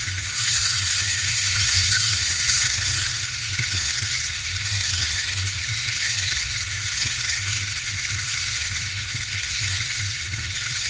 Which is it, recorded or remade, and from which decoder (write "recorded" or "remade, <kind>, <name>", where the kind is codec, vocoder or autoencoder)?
remade, codec, SNAC